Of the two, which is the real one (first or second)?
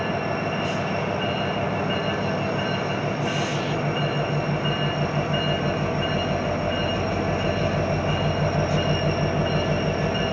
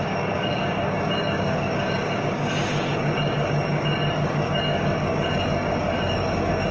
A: first